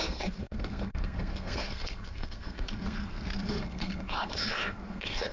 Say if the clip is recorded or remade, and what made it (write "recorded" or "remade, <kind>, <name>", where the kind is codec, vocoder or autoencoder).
remade, codec, SNAC